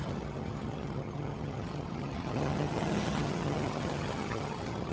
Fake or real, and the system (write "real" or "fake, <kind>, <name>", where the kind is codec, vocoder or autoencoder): fake, vocoder, HiFi-GAN